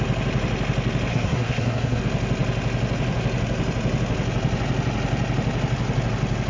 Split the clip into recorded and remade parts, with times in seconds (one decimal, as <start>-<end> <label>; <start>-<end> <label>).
0.0-1.1 recorded; 1.1-2.0 remade; 2.0-6.5 recorded